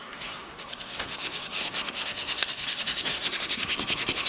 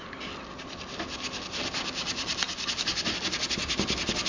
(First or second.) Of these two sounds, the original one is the second